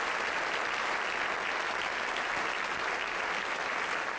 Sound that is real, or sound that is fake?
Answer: real